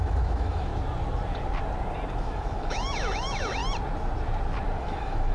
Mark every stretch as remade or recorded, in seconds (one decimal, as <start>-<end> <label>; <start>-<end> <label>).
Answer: 0.0-0.7 remade; 0.7-2.2 recorded; 2.2-3.6 remade; 3.6-4.8 recorded; 4.8-5.3 remade